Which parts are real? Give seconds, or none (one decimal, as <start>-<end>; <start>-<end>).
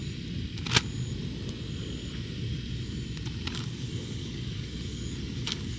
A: 0.0-3.5